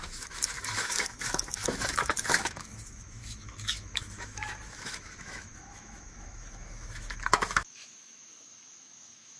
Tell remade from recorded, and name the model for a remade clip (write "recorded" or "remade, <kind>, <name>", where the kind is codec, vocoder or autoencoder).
remade, autoencoder, DAC-VAE